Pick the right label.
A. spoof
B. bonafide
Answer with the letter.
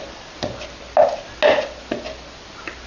B